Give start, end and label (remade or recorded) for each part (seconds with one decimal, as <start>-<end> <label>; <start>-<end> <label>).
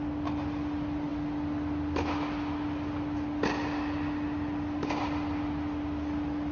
0.0-6.5 recorded